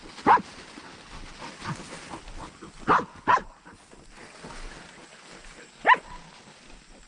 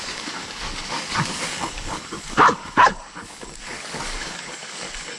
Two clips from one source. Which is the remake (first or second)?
second